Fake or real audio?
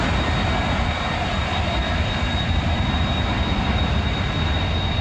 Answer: real